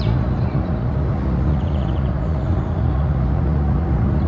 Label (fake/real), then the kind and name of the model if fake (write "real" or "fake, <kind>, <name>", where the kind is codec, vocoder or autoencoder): fake, vocoder, Vocos